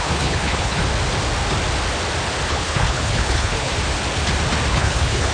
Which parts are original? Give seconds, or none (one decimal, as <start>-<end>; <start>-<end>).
0.8-2.5; 3.7-4.7